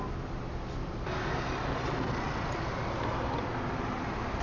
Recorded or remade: recorded